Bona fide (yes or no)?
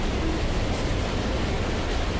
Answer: yes